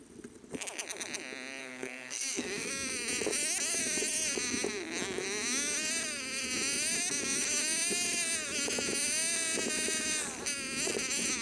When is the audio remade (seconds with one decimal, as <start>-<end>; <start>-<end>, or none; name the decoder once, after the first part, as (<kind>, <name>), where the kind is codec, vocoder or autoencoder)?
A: 1.6-2.7 (codec, SNAC)